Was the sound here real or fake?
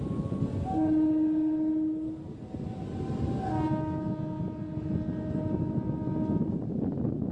real